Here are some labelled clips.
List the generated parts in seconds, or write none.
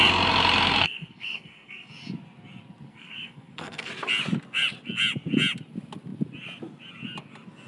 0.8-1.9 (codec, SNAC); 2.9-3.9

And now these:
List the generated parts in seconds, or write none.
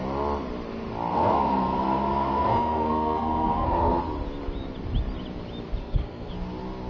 1.1-4.0 (codec, SNAC); 5.8-6.3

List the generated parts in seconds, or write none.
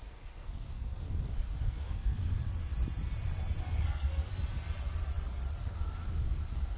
0.0-2.4 (codec, SNAC); 3.6-4.3; 5.6-6.8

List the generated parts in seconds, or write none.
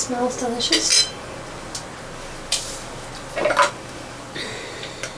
none